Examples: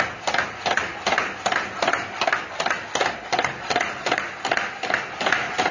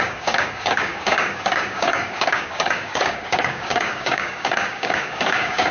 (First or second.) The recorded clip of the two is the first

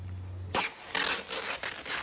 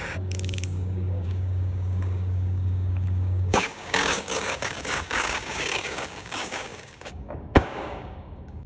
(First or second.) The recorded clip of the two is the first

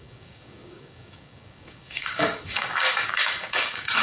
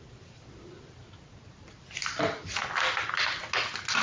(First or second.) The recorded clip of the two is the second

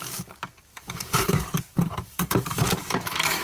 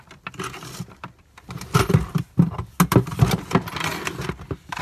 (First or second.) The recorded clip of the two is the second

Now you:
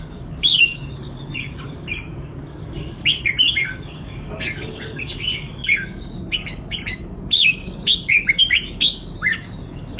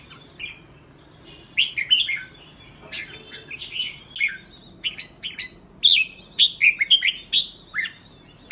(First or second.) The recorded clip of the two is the second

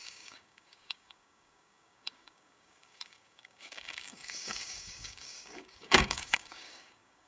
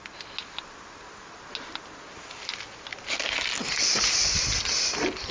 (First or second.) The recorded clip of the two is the second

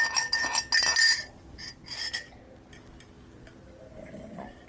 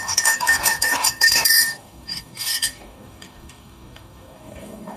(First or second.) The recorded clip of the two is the first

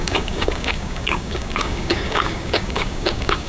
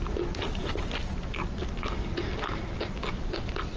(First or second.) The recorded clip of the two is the second